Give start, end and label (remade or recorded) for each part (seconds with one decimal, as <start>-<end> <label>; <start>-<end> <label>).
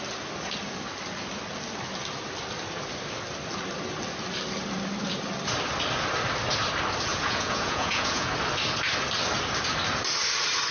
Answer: 0.0-7.1 recorded; 7.1-8.3 remade; 8.3-10.7 recorded